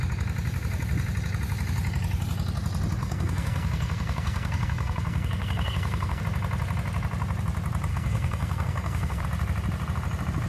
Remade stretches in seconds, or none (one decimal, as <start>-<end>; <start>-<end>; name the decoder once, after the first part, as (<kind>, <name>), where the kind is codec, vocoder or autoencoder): 3.0-6.2 (codec, SNAC); 7.9-9.2

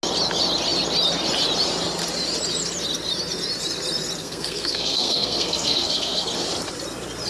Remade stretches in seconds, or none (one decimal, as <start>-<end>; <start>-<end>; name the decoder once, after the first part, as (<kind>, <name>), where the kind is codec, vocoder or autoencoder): 4.2-6.3 (codec, SNAC)

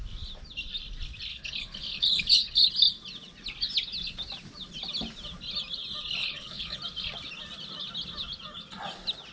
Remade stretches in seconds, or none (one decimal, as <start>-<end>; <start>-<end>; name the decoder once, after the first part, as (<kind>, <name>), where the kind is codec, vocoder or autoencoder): 1.3-2.7 (codec, HILCodec); 6.2-6.8

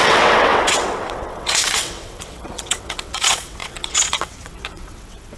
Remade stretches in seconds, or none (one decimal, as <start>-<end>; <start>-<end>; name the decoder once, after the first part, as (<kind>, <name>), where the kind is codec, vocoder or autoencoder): 0.0-5.4 (vocoder, WaveNeXt)